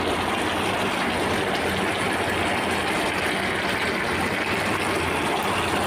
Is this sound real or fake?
real